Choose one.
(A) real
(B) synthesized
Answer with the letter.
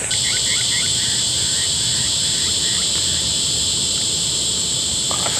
B